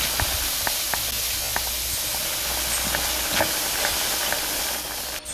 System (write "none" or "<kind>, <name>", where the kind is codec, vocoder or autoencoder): none